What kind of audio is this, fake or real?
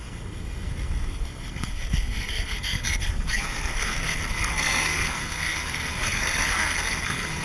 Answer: fake